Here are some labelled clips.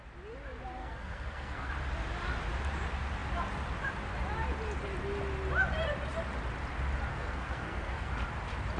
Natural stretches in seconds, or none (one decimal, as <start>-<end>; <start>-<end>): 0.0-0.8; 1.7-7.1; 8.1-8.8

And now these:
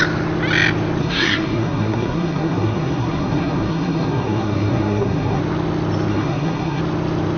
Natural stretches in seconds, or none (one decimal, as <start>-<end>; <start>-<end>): 0.0-1.0; 5.4-6.1; 6.8-7.4

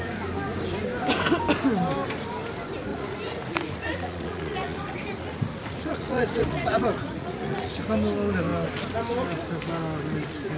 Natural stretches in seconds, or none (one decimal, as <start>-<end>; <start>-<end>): 0.0-2.9; 7.8-10.6

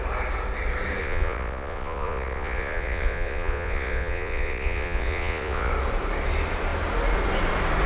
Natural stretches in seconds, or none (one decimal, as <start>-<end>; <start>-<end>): 0.0-1.0; 5.7-7.9

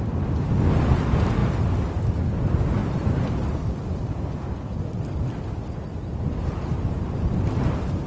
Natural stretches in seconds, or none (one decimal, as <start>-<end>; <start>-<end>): 0.0-8.1

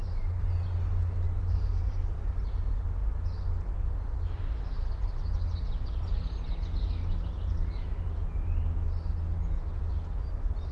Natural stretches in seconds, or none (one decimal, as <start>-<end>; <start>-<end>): 0.0-10.7